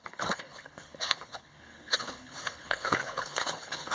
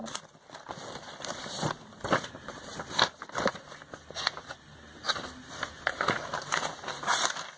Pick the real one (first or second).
second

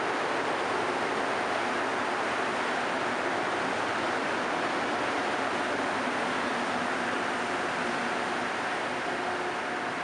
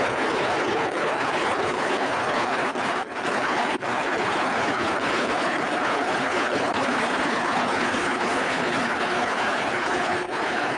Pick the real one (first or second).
first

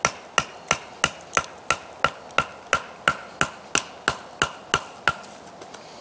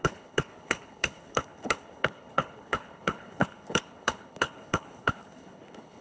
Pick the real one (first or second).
first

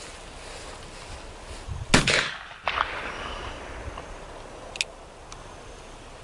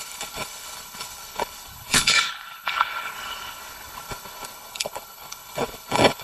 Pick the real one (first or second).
first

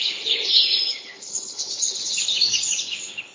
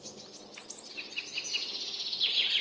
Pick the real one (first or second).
second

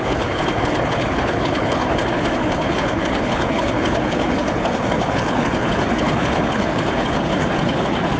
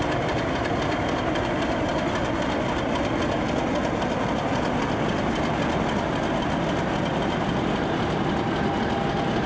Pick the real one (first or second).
second